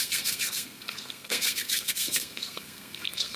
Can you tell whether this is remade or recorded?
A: remade